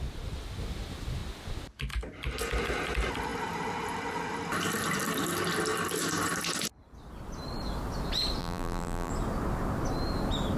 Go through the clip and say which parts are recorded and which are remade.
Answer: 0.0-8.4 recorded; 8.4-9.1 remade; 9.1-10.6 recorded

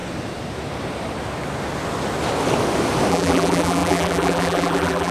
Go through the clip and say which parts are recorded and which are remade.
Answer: 0.0-3.1 recorded; 3.1-5.1 remade

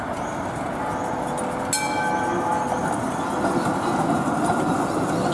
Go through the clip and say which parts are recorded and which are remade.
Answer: 0.0-5.3 recorded

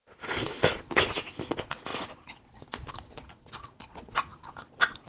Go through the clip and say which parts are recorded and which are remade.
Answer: 0.0-1.9 recorded; 1.9-2.9 remade; 2.9-5.1 recorded